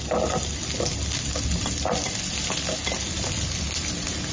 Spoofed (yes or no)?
no